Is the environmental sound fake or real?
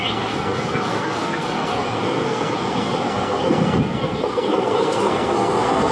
fake